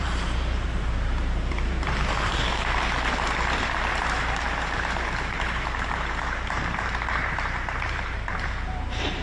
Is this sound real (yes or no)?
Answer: no